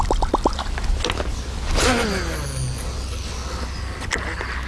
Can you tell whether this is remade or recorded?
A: recorded